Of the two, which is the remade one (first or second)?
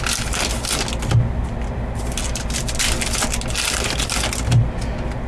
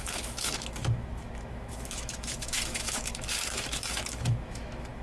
second